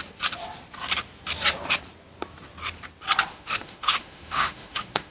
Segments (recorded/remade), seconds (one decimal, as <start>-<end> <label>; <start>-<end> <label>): 0.0-3.3 recorded; 3.3-5.1 remade